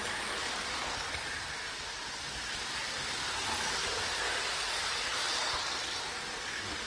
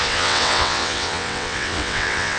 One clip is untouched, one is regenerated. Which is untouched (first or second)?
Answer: first